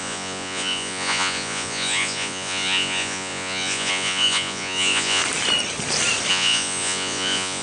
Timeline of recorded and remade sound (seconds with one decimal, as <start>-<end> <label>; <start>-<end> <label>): 0.0-5.2 remade; 5.2-6.3 recorded; 6.3-7.6 remade